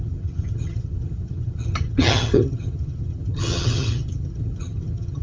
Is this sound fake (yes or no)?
yes